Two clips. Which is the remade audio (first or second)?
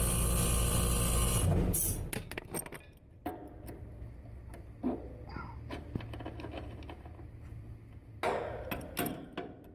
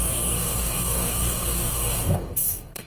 second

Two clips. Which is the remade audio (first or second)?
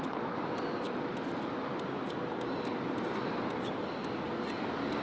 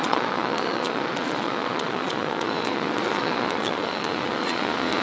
second